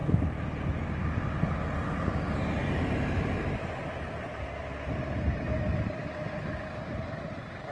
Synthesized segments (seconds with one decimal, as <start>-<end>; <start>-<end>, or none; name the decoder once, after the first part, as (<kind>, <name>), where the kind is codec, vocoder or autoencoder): 2.6-6.0 (vocoder, BigVGAN v2)